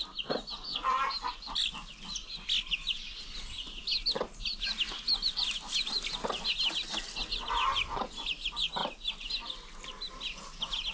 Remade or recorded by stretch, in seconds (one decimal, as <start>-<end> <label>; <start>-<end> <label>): 0.0-10.9 recorded